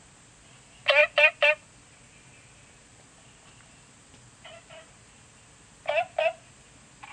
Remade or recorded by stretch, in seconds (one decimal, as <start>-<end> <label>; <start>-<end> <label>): 0.0-7.1 recorded